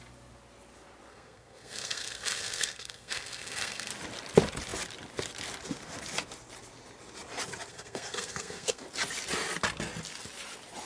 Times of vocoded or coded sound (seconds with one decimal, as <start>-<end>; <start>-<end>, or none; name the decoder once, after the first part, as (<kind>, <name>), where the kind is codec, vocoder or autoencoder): 1.1-3.9 (codec, SNAC); 7.7-8.8